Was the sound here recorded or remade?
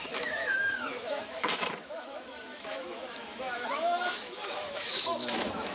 remade